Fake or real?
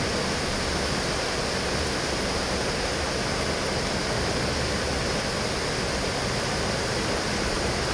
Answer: real